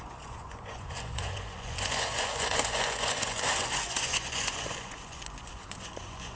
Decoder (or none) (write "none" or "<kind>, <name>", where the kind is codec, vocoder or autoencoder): vocoder, Vocos